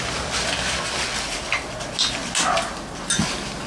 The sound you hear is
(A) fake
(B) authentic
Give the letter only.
B